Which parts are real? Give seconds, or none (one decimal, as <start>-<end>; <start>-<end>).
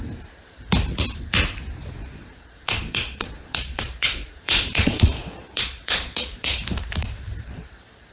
0.0-1.7; 6.6-8.1